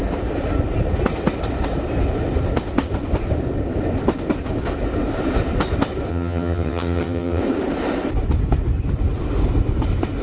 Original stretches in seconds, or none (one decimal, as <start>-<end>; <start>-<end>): 0.0-6.1; 7.4-10.2